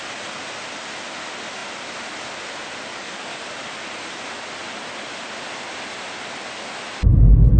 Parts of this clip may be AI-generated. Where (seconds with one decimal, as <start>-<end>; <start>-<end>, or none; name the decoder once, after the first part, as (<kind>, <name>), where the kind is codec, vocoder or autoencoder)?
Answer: 2.9-3.4 (codec, DAC)